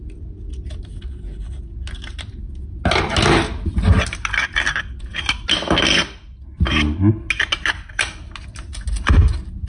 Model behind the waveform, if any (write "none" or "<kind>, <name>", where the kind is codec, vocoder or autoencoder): none